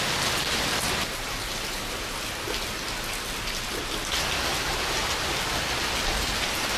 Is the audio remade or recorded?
recorded